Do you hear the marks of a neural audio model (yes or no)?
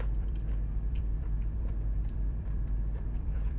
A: yes